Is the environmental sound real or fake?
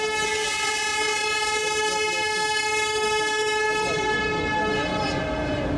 real